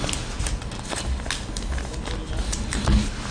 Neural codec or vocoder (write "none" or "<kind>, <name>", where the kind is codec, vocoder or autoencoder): none